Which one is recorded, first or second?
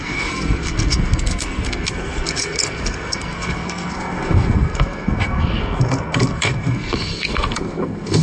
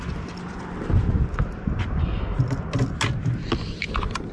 second